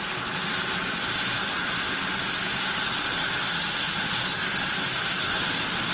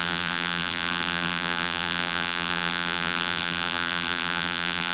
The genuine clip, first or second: first